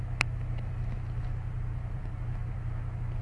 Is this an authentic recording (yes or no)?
yes